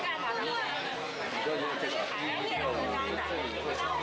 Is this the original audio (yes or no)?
yes